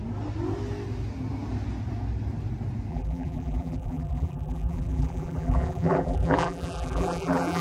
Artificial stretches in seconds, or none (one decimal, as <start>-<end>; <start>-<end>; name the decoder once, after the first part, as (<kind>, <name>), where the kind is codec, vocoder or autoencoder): 2.9-7.6 (vocoder, BigVGAN v2)